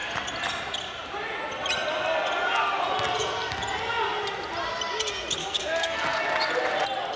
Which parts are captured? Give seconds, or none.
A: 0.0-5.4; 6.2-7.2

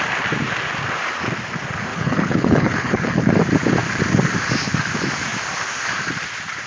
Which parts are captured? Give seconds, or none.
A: 0.0-1.9; 3.3-6.7

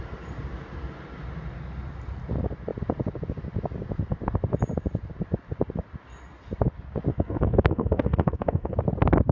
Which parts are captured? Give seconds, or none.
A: 0.0-7.1; 8.8-9.3

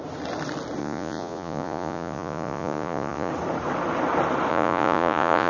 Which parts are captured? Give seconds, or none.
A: 0.0-0.8; 3.3-4.5

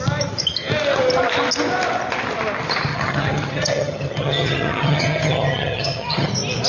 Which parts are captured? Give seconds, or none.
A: 0.0-2.9; 6.3-6.7

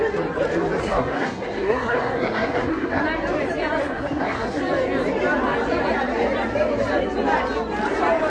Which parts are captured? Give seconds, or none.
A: 0.0-0.8; 3.0-3.8; 4.6-8.3